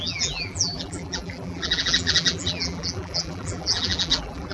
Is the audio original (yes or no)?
no